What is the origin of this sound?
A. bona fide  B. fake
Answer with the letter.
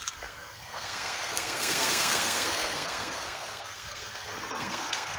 B